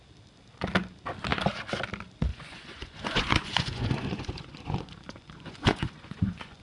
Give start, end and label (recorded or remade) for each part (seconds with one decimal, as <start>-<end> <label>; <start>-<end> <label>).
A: 0.0-2.3 recorded; 2.3-6.6 remade